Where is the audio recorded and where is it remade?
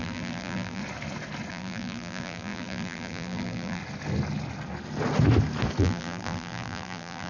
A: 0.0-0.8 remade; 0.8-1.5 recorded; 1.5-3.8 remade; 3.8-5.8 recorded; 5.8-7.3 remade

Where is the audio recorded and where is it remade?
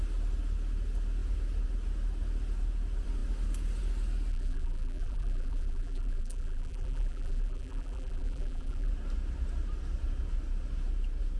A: 0.0-4.3 recorded; 4.3-8.9 remade; 8.9-11.4 recorded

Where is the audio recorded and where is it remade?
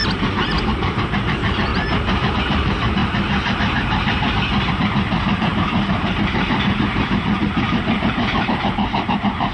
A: 0.0-0.7 recorded; 0.7-1.7 remade; 1.7-2.3 recorded; 2.3-3.0 remade; 3.0-4.7 recorded; 4.7-9.5 remade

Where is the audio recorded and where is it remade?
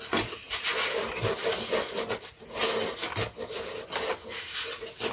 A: 0.0-5.1 recorded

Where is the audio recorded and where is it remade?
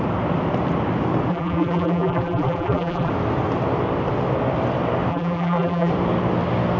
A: 0.0-1.3 recorded; 1.3-3.1 remade; 3.1-5.1 recorded; 5.1-5.9 remade; 5.9-6.8 recorded